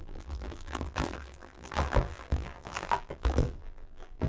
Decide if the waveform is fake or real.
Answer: fake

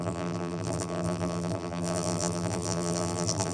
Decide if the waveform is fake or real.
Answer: fake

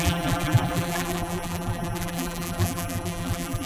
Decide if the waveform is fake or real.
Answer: fake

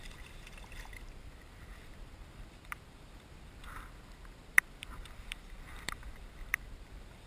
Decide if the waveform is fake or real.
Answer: fake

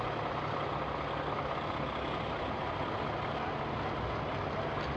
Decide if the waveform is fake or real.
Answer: real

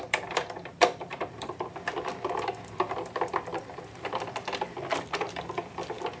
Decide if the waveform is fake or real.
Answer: fake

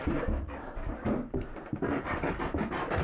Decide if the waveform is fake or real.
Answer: fake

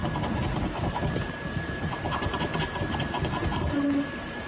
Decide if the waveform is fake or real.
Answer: fake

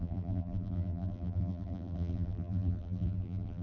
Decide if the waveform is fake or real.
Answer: fake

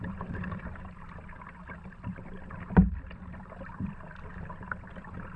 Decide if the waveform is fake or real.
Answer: real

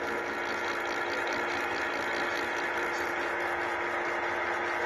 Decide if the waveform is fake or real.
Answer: real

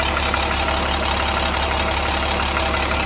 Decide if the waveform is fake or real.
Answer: fake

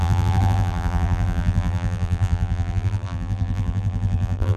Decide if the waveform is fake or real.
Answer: fake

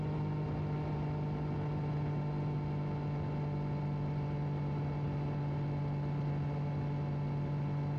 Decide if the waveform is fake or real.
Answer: real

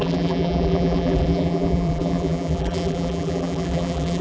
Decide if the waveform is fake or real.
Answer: fake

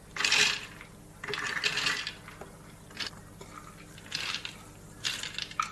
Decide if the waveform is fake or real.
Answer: real